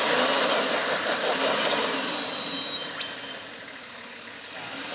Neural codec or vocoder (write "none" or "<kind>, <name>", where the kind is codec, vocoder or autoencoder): none